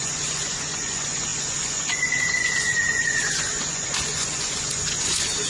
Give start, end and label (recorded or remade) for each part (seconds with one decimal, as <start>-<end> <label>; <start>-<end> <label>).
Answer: 0.0-5.5 remade